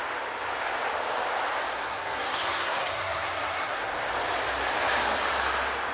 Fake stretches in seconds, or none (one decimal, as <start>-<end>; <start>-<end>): 1.7-3.9